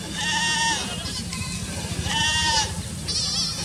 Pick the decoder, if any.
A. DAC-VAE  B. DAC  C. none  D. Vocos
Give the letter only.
C